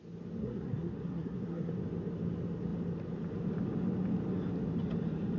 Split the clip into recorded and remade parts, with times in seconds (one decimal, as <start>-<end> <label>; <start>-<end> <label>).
0.0-0.4 recorded; 0.4-1.7 remade; 1.7-5.4 recorded